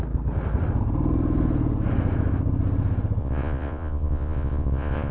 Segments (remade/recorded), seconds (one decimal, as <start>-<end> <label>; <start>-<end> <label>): 0.0-3.2 recorded; 3.2-5.1 remade